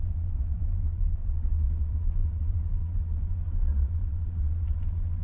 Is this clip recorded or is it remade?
remade